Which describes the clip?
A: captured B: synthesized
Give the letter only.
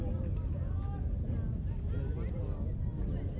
A